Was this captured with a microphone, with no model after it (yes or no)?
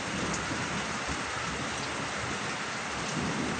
yes